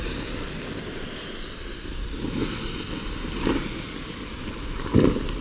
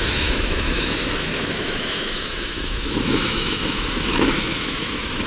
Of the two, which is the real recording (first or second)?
first